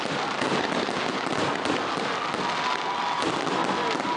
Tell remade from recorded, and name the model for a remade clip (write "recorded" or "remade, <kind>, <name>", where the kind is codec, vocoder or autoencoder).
recorded